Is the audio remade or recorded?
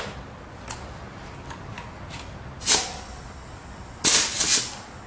recorded